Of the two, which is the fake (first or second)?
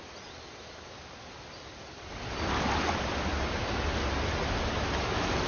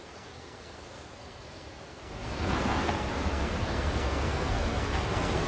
second